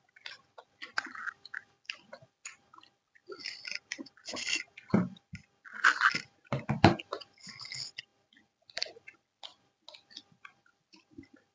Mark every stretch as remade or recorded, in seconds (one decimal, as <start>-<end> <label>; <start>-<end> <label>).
0.0-11.5 recorded